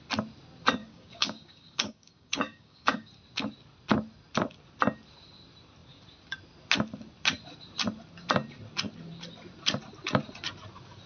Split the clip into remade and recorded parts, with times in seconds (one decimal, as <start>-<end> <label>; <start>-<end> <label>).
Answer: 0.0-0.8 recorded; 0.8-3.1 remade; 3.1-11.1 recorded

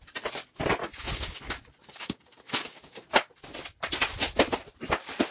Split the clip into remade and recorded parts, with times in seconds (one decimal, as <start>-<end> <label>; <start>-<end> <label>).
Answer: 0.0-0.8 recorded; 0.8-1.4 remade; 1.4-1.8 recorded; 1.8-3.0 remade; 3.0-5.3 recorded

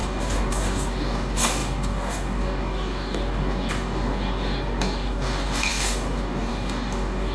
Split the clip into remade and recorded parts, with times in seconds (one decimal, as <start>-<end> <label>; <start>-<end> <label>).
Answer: 0.0-7.3 remade